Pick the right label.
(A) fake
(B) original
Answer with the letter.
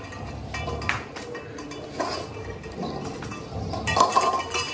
B